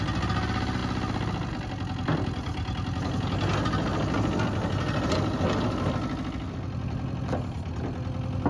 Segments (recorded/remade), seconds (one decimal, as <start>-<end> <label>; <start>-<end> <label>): 0.0-8.5 recorded